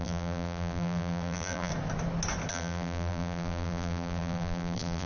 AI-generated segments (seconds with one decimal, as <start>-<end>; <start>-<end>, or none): 0.0-1.7; 2.5-5.1